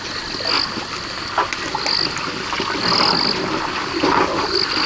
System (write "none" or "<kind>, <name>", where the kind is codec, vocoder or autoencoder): none